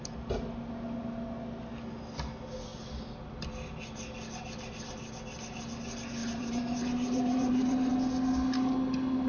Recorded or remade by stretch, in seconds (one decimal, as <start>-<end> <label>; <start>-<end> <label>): 0.0-6.2 recorded; 6.2-7.9 remade; 7.9-9.3 recorded